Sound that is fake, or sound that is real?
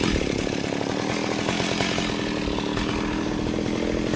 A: real